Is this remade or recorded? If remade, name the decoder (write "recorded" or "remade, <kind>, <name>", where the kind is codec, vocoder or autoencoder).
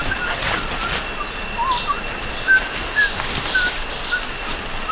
recorded